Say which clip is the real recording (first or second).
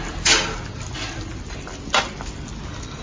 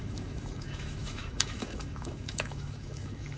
first